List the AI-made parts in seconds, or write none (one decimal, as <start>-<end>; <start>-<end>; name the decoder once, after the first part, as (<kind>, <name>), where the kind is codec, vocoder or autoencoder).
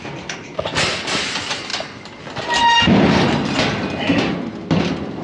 none